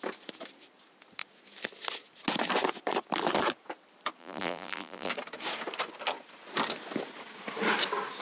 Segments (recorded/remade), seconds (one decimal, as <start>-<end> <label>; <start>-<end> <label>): 0.0-4.2 recorded; 4.2-5.1 remade; 5.1-8.2 recorded